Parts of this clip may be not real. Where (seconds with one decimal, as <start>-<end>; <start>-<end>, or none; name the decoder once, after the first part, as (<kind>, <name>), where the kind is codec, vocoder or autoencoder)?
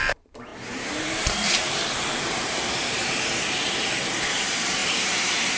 0.0-5.6 (vocoder, BigVGAN v2)